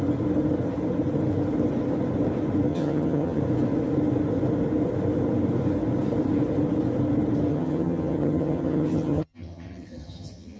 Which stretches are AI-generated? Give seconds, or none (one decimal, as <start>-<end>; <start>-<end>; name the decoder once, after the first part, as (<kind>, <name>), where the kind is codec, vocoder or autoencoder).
2.7-3.4 (vocoder, HiFi-GAN); 7.5-10.6